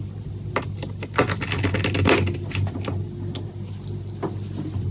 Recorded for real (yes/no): yes